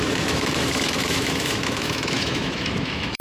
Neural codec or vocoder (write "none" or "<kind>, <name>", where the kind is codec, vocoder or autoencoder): autoencoder, DAC-VAE